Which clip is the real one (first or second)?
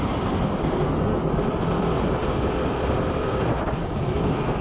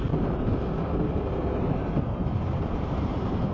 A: first